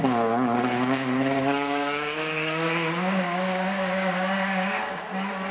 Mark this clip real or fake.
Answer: fake